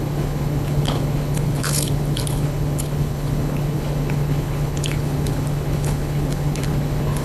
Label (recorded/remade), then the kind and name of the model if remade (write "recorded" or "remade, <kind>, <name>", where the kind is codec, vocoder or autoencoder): remade, codec, HILCodec